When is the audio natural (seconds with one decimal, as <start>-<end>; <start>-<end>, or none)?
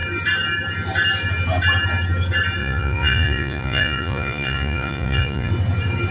0.0-2.6; 5.5-6.1